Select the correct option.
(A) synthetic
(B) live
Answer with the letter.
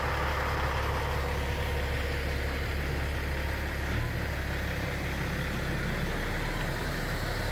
B